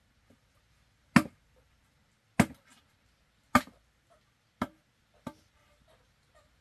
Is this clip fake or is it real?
real